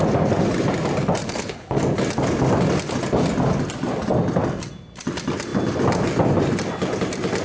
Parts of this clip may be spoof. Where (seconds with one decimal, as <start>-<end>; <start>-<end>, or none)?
1.2-1.8